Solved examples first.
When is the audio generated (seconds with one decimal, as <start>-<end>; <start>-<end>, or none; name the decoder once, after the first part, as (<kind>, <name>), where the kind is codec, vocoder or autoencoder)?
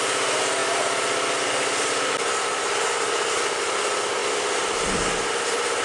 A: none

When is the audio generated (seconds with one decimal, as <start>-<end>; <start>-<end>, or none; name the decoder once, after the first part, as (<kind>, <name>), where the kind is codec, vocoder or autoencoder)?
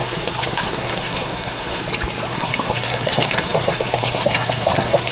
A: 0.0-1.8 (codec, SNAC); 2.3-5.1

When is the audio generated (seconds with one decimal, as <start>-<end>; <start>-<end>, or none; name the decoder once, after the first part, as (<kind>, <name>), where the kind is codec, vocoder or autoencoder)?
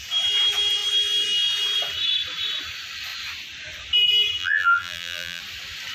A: 4.4-5.4 (vocoder, BigVGAN v2)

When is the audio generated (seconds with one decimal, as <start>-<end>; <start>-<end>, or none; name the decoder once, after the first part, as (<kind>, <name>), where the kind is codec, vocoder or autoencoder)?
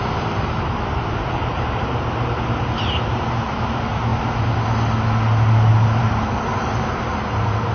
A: 0.0-4.1 (vocoder, BigVGAN v2); 6.0-7.7